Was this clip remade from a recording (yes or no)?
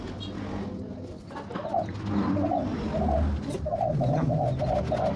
no